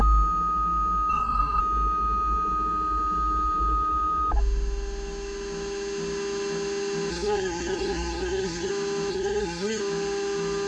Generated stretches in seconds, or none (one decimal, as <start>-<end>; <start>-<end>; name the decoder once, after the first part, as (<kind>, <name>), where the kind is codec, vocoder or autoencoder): 1.1-1.6 (codec, SNAC); 7.1-8.7; 9.1-9.8